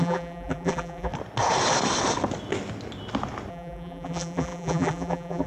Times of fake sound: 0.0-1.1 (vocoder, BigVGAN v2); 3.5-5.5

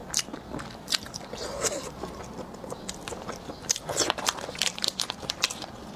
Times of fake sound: 3.0-6.0 (vocoder, BigVGAN v2)